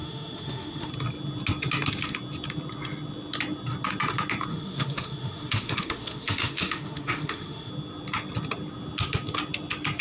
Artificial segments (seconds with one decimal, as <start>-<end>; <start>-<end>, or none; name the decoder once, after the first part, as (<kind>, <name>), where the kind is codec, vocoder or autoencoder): 0.0-0.9 (autoencoder, DAC-VAE); 4.5-7.7